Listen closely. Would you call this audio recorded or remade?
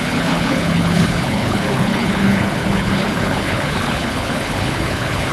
remade